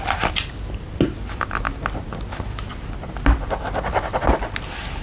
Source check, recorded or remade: recorded